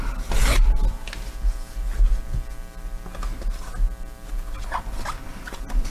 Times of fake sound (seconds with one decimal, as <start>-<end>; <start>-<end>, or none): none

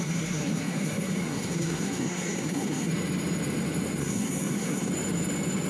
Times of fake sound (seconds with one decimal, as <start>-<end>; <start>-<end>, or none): 0.0-2.9; 4.0-4.9

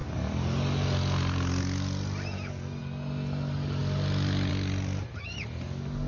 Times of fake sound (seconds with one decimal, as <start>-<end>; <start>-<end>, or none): none

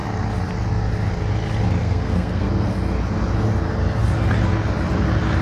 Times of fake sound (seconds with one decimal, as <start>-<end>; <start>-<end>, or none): 1.8-2.5

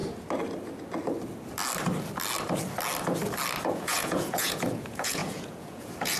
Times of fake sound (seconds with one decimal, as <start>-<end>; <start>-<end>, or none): 3.7-6.2

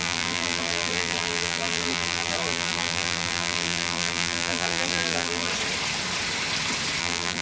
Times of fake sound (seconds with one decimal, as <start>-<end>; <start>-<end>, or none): 0.0-5.5; 7.0-7.4